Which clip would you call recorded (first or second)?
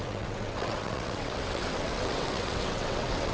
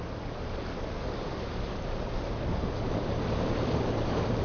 second